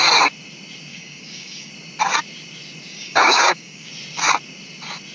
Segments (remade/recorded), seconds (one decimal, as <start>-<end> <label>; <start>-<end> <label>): 0.0-0.9 recorded; 0.9-1.7 remade; 1.7-2.9 recorded; 2.9-3.9 remade; 3.9-5.1 recorded